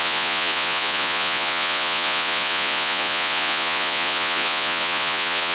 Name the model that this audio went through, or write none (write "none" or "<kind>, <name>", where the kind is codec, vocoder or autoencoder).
vocoder, Vocos